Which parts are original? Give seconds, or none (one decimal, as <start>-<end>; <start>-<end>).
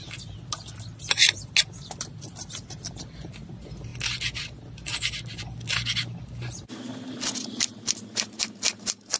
0.0-9.2